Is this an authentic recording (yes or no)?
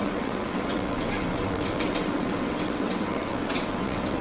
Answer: no